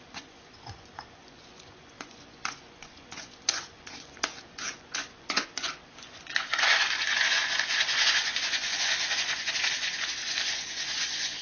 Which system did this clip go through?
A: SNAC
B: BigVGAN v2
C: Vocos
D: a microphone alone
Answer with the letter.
C